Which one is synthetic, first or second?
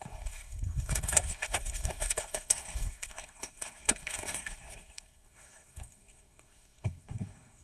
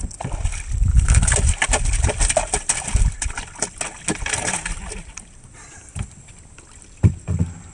first